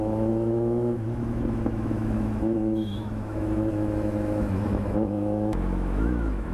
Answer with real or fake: fake